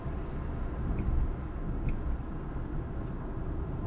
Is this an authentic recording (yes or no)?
yes